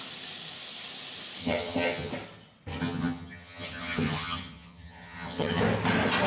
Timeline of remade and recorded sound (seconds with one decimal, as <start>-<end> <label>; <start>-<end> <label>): 0.0-1.4 recorded; 1.4-2.1 remade; 2.1-2.8 recorded; 2.8-5.6 remade; 5.6-6.3 recorded

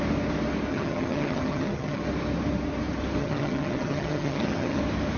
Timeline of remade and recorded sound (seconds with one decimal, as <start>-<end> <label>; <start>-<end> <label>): 0.0-0.7 recorded; 0.7-2.0 remade; 2.0-3.2 recorded; 3.2-4.8 remade; 4.8-5.2 recorded

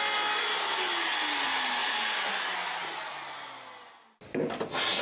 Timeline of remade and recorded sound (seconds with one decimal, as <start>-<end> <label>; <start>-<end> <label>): 0.0-5.0 recorded

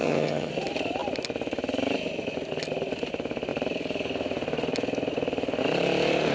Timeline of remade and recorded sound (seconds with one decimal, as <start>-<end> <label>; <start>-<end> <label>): 0.0-0.5 remade; 0.5-6.3 recorded